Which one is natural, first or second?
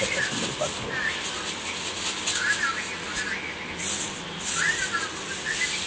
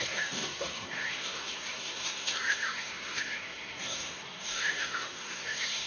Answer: first